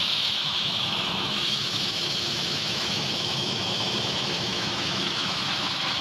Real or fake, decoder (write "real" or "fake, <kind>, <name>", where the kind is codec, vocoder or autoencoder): fake, autoencoder, DAC-VAE